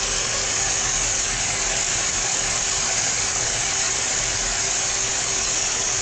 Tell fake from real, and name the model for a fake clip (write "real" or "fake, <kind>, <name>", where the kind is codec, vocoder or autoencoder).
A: fake, codec, DAC